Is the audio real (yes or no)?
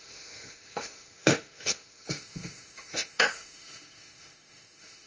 no